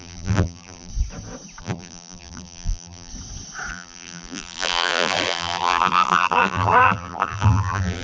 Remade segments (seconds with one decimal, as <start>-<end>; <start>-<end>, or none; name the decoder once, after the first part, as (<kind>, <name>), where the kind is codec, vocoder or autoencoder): 0.0-0.9 (vocoder, BigVGAN v2); 1.6-3.1; 3.7-8.0